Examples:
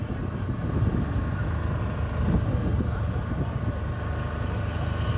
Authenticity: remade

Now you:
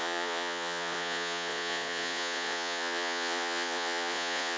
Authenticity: remade